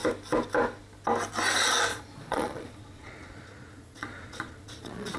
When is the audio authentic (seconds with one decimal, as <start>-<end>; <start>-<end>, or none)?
0.0-1.9